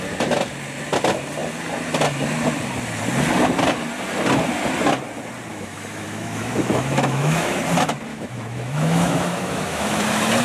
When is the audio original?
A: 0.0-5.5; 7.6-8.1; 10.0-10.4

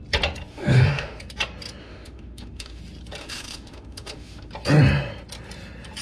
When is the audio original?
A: 0.0-0.5; 1.2-1.8; 2.8-3.2; 4.5-6.0

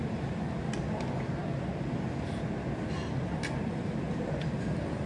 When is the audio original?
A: 0.0-5.1

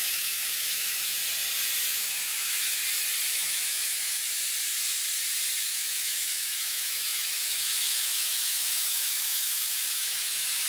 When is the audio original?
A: 1.2-1.9; 2.8-3.3; 4.2-5.6